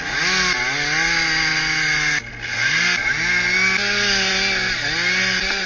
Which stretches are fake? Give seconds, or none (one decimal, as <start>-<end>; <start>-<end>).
none